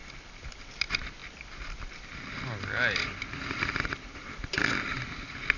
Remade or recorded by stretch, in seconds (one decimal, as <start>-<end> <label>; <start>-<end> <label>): 0.0-0.5 recorded; 0.5-5.6 remade